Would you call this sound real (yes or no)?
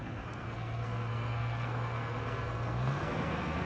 no